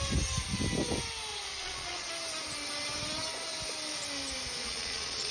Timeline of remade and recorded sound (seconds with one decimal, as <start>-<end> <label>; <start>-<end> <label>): 0.0-1.3 recorded; 1.3-2.1 remade; 2.1-4.6 recorded; 4.6-5.3 remade